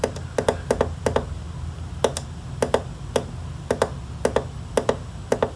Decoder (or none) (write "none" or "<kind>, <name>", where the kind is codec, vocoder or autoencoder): none